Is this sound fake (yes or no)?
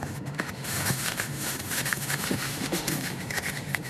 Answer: yes